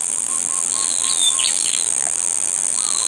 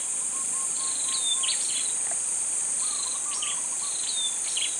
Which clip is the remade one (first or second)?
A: first